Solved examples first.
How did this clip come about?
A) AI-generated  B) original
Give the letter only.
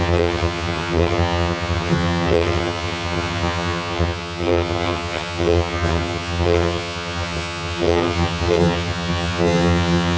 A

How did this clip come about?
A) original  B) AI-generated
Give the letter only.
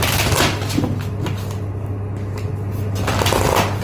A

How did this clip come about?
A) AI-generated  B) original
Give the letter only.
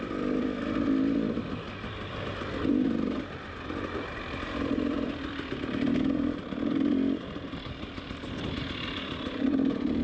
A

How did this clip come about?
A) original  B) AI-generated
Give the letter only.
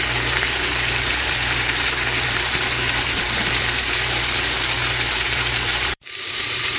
B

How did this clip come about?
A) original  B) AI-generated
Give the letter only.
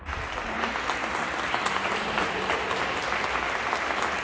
A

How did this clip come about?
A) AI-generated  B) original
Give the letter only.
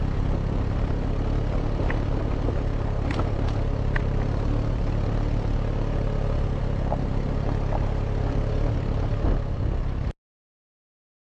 B